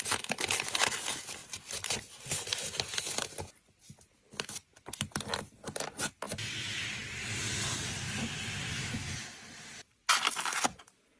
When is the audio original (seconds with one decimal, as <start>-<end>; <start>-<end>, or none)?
0.0-11.2